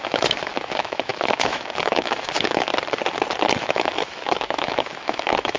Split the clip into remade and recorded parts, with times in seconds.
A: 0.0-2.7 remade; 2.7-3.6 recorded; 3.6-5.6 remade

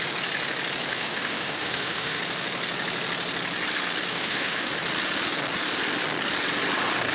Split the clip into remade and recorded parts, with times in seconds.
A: 0.0-0.9 recorded; 0.9-2.2 remade; 2.2-4.1 recorded; 4.1-4.7 remade; 4.7-7.1 recorded

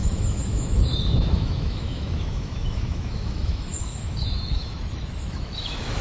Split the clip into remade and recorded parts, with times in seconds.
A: 0.0-6.0 remade

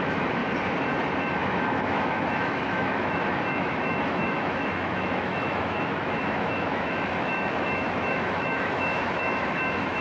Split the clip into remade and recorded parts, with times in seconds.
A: 0.0-0.4 remade; 0.4-1.4 recorded; 1.4-10.0 remade

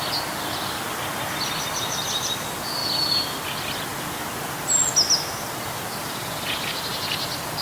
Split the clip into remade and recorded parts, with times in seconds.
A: 0.0-7.6 recorded

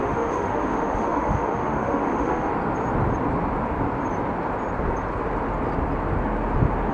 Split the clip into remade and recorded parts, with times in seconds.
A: 0.0-2.5 remade; 2.5-6.9 recorded

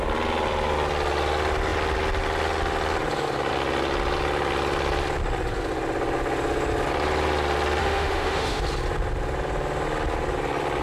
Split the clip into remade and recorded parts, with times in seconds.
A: 0.0-7.8 recorded; 7.8-8.6 remade; 8.6-10.8 recorded

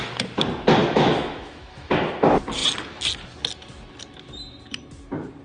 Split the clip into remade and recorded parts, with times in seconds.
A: 0.0-0.8 recorded; 0.8-1.9 remade; 1.9-5.4 recorded